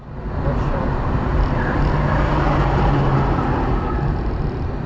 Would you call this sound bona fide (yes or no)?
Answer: yes